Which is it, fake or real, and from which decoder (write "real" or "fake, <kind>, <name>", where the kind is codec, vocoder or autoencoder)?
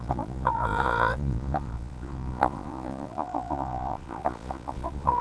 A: fake, vocoder, Vocos